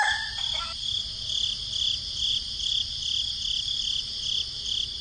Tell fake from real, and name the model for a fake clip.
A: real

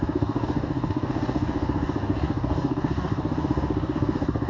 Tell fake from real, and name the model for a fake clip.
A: fake, codec, DAC